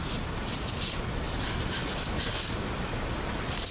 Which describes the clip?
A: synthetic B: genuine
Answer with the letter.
B